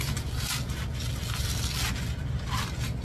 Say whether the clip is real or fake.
real